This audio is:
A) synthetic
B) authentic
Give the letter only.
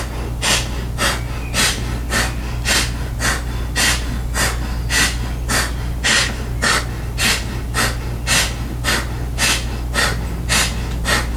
B